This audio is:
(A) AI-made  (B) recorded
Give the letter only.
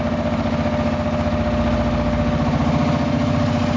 B